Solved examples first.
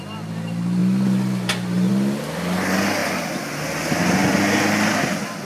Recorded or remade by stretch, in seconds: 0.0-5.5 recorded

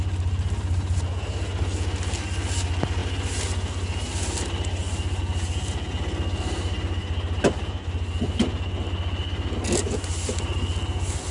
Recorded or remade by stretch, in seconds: 0.0-11.3 recorded

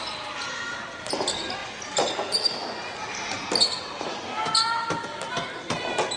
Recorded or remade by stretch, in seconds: 0.0-6.2 recorded

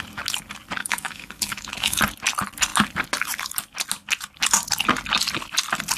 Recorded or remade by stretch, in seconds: 0.0-0.8 recorded; 0.8-2.0 remade; 2.0-6.0 recorded

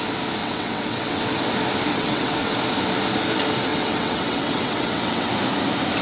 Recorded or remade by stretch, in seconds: 0.0-0.4 recorded; 0.4-1.2 remade; 1.2-1.9 recorded; 1.9-2.5 remade; 2.5-3.7 recorded; 3.7-5.3 remade; 5.3-6.0 recorded

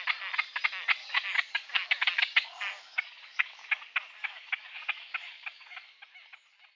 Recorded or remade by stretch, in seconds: 0.0-1.0 recorded; 1.0-3.8 remade; 3.8-4.2 recorded; 4.2-5.9 remade; 5.9-6.8 recorded